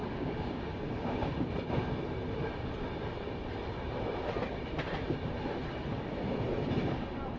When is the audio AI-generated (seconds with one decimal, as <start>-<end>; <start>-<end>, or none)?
0.0-1.3